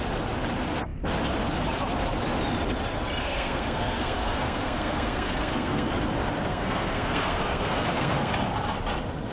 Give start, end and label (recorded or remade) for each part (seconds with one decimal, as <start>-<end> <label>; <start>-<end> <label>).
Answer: 0.0-3.2 recorded; 3.2-5.9 remade; 5.9-6.5 recorded; 6.5-8.3 remade; 8.3-9.3 recorded